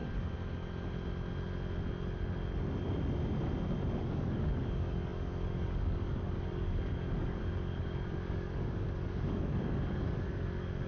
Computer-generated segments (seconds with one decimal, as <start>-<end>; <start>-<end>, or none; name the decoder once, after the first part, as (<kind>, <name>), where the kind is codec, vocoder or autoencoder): 4.0-10.9 (codec, DAC)